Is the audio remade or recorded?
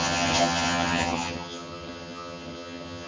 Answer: remade